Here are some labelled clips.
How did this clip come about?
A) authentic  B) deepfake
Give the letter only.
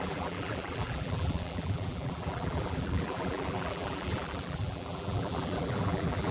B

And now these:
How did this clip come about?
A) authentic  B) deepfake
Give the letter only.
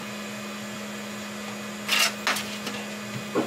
A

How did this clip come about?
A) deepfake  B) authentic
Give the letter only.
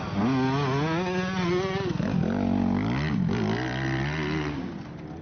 B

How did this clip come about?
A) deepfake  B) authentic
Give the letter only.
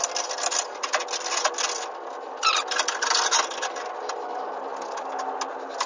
B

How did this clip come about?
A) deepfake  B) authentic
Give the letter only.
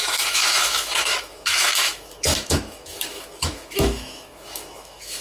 A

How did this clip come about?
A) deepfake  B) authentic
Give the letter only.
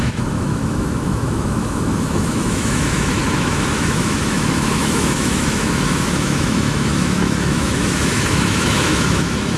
A